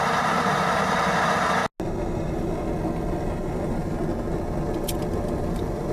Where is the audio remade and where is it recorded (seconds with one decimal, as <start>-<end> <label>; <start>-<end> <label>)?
0.0-1.6 remade; 1.6-5.1 recorded; 5.1-5.9 remade